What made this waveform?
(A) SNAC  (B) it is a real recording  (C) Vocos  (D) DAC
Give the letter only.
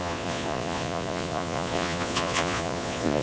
C